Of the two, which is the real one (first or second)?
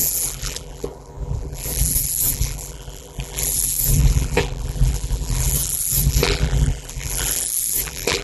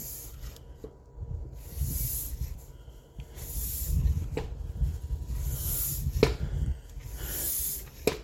second